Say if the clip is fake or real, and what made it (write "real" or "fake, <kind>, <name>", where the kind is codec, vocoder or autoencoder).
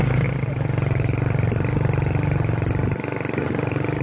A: real